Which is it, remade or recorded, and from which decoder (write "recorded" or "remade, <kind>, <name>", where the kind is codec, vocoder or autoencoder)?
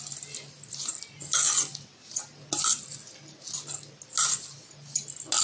recorded